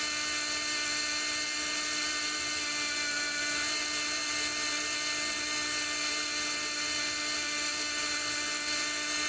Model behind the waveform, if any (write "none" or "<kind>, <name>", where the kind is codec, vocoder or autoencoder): none